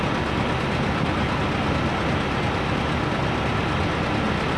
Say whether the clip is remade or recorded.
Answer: recorded